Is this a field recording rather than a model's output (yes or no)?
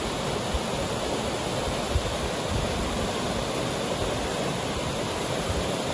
yes